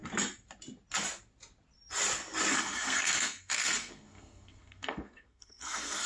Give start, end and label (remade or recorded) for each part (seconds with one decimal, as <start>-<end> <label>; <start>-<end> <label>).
0.0-2.5 recorded; 2.5-6.1 remade